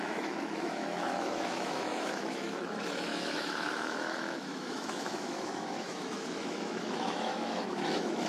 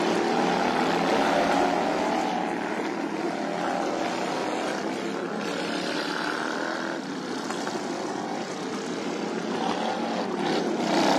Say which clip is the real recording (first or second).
second